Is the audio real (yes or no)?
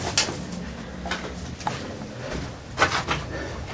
yes